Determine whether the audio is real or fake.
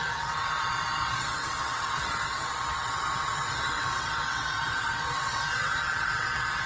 fake